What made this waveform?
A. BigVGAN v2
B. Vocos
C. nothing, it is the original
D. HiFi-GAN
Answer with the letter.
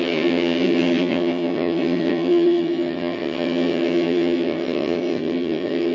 D